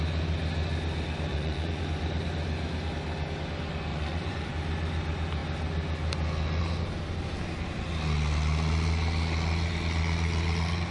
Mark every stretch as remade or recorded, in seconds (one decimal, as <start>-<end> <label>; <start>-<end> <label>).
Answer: 0.0-1.3 recorded; 1.3-1.8 remade; 1.8-3.9 recorded; 3.9-4.5 remade; 4.5-10.9 recorded